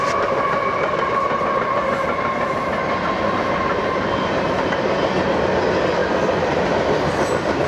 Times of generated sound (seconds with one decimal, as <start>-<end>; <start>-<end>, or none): 6.0-7.7